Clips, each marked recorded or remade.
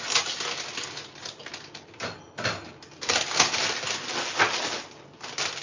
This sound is recorded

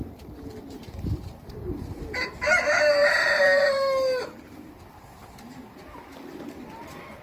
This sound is remade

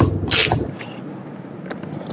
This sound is recorded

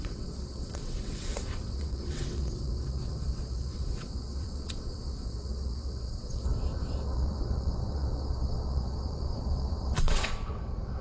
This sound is remade